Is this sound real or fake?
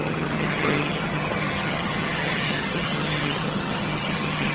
fake